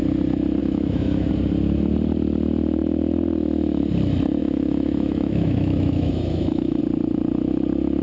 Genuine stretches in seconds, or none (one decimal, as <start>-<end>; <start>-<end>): 0.0-0.6; 1.3-4.4; 6.8-8.0